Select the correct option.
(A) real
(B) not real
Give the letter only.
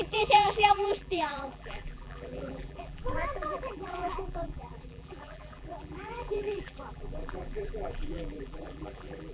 B